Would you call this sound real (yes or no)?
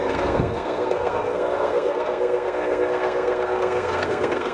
no